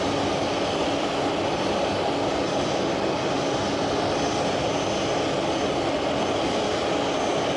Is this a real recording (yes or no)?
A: yes